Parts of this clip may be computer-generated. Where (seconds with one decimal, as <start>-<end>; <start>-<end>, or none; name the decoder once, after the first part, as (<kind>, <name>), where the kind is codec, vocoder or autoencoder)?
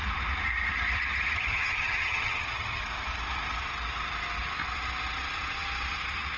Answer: 1.5-2.8 (vocoder, HiFi-GAN)